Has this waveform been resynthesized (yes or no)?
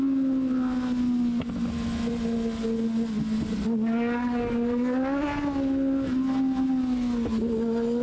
no